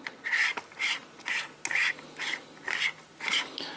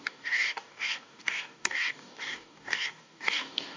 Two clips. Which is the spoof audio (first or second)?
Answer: second